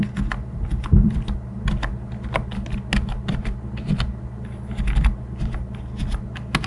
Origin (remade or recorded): recorded